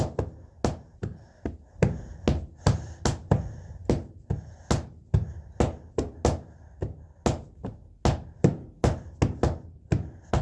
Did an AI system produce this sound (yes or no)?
no